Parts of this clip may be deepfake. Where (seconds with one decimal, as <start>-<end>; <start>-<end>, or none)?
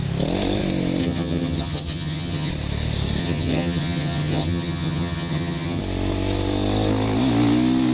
1.0-2.5; 3.2-5.8